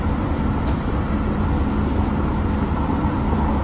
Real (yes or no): yes